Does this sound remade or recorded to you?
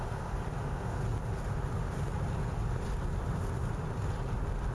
recorded